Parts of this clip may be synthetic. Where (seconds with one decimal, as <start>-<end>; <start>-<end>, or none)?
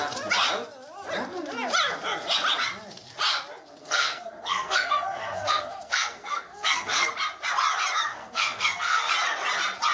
3.8-7.1; 8.1-9.1